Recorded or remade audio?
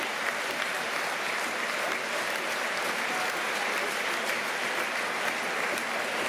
recorded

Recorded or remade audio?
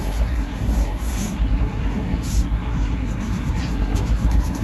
remade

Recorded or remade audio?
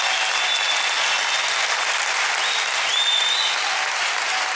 recorded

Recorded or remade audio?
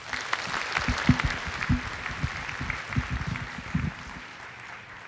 recorded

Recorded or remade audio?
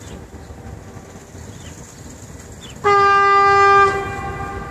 recorded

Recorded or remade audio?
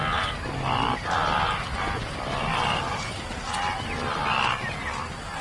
recorded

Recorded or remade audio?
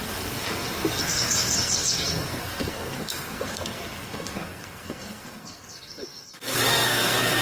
remade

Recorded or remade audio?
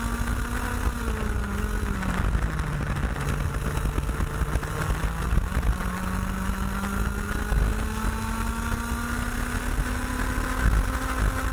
recorded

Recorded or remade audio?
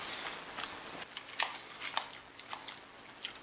recorded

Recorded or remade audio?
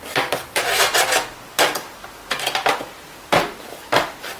recorded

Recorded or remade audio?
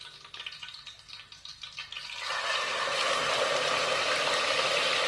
recorded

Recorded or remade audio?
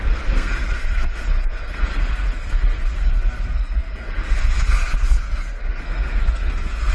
remade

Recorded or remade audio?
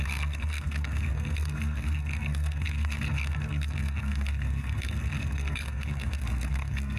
remade